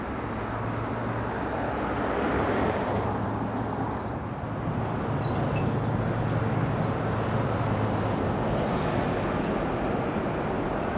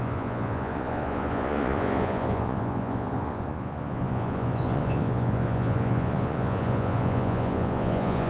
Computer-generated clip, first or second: second